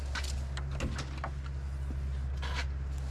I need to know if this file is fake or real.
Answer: real